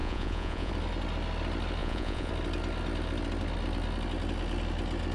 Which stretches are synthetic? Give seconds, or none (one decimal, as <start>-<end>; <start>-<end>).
0.0-0.7; 1.8-2.3